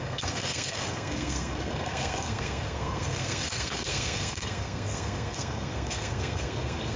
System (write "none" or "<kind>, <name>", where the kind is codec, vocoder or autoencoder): codec, SNAC